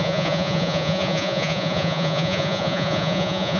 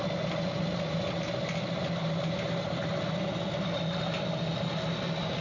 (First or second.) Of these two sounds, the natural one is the second